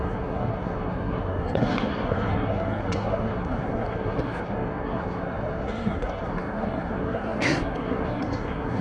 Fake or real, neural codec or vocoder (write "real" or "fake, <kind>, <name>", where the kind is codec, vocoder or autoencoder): fake, codec, SNAC